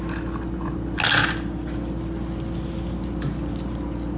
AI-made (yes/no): no